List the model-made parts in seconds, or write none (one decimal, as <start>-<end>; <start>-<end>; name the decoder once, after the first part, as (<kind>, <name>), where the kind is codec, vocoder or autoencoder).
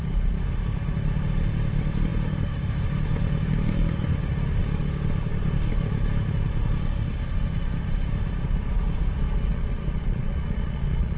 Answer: 9.5-11.2 (vocoder, Vocos)